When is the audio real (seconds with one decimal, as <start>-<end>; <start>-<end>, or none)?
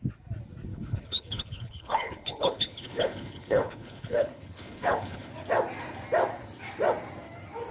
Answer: 0.0-0.7; 5.3-7.7